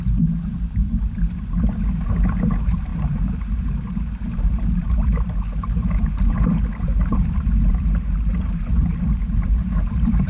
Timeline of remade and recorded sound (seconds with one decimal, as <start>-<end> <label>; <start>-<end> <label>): 0.0-0.8 remade; 0.8-2.0 recorded; 2.0-10.3 remade